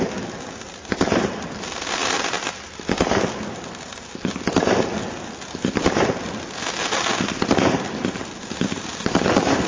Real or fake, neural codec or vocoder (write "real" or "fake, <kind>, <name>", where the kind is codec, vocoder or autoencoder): real